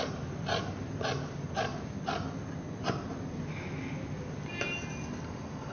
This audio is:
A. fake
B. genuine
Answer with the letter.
B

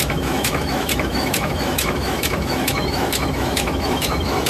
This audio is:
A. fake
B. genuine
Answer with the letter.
A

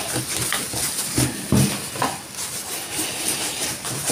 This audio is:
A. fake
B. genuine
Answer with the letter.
B